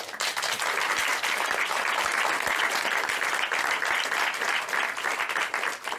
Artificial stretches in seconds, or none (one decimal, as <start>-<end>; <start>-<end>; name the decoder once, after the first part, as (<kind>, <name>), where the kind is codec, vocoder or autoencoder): 1.1-1.8 (vocoder, BigVGAN v2)